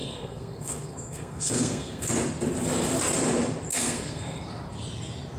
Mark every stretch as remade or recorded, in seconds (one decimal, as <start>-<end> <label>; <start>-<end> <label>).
0.0-2.1 remade; 2.1-3.7 recorded; 3.7-4.4 remade; 4.4-5.4 recorded